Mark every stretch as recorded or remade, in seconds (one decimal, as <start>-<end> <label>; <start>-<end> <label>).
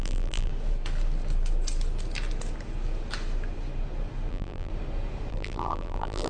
0.0-0.5 remade; 0.5-4.3 recorded; 4.3-4.7 remade; 4.7-5.3 recorded; 5.3-6.3 remade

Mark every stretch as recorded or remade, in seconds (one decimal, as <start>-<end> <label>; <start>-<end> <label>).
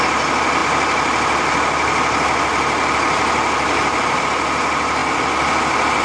0.0-6.0 recorded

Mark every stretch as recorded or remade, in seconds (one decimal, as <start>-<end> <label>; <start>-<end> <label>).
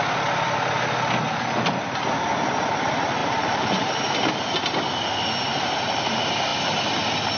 0.0-3.2 recorded; 3.2-4.5 remade; 4.5-5.5 recorded; 5.5-6.1 remade; 6.1-7.4 recorded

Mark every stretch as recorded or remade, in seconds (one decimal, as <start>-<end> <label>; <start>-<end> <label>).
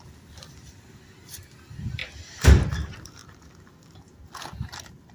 0.0-2.0 remade; 2.0-2.6 recorded; 2.6-3.2 remade; 3.2-5.1 recorded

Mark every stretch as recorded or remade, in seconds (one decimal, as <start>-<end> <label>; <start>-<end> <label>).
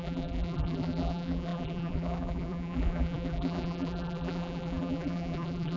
0.0-5.8 remade